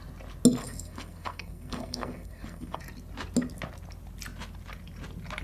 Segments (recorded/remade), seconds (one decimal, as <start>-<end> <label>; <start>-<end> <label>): 0.0-0.6 recorded; 0.6-2.8 remade; 2.8-5.4 recorded

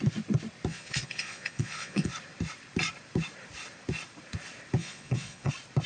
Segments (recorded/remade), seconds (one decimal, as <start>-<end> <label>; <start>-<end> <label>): 0.0-0.7 recorded; 0.7-2.1 remade; 2.1-4.8 recorded; 4.8-5.5 remade; 5.5-5.9 recorded